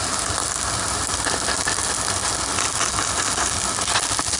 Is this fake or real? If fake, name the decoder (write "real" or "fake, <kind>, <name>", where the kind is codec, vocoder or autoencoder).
real